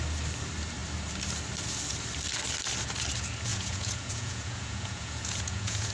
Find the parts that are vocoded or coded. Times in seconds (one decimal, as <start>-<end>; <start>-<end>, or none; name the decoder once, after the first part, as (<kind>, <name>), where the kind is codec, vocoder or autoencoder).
3.5-5.9 (vocoder, Vocos)